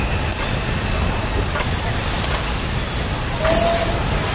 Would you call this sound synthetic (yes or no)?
no